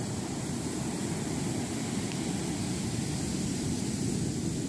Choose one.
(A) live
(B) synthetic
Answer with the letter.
A